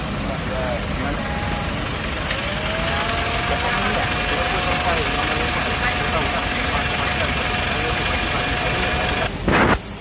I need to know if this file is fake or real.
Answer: real